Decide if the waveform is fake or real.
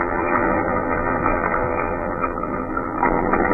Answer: fake